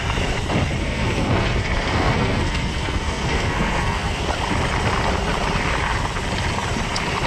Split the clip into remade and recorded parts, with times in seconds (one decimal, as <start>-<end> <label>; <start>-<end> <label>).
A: 0.0-0.8 recorded; 0.8-4.2 remade; 4.2-7.3 recorded